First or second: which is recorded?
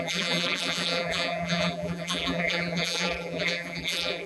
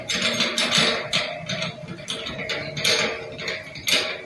second